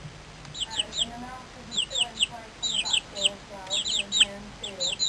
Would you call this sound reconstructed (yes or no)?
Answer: no